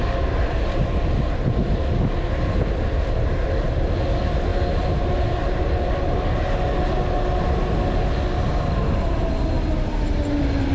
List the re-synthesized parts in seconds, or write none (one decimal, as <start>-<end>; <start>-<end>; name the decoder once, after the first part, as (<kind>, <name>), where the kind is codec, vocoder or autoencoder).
none